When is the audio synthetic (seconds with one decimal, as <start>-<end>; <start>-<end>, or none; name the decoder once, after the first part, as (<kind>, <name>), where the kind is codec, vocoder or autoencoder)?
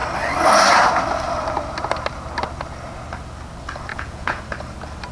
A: 3.9-4.4 (vocoder, Vocos)